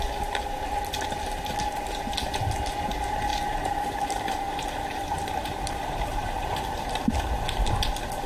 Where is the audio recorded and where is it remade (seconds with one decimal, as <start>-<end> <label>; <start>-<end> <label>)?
0.0-3.3 recorded; 3.3-7.0 remade; 7.0-8.3 recorded